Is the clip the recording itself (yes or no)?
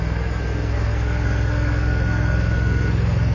no